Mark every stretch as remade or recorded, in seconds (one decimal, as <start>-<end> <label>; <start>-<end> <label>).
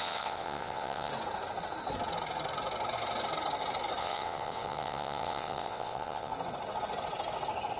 0.0-1.1 remade; 1.1-4.0 recorded; 4.0-6.3 remade; 6.3-7.8 recorded